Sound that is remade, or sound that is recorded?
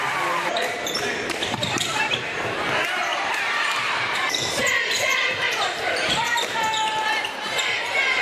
remade